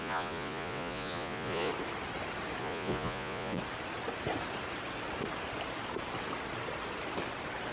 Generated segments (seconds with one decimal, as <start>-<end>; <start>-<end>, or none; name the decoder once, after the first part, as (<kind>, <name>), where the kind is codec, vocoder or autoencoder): 0.0-1.7 (vocoder, Vocos); 2.6-3.6